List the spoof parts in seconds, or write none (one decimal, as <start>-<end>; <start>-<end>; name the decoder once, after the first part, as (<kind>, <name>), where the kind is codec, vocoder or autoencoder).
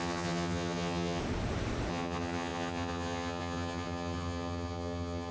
0.0-1.2 (vocoder, HiFi-GAN); 1.9-5.3